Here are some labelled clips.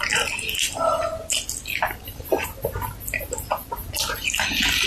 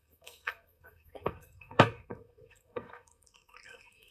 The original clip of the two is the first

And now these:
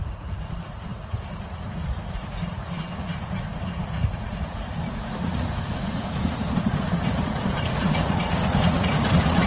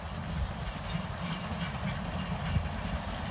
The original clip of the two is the second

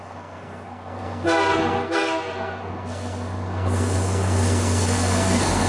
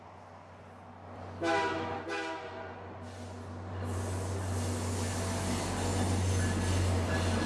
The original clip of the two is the second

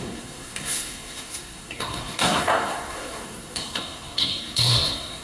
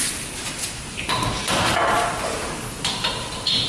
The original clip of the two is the second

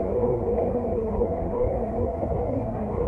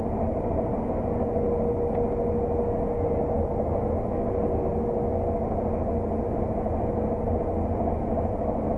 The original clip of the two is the second